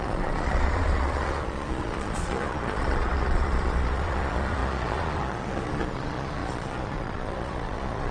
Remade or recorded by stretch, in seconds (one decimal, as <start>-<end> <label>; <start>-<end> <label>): 0.0-8.1 remade